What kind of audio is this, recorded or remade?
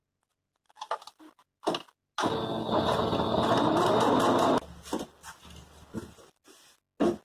recorded